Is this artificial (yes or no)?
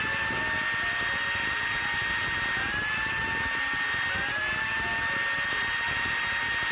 no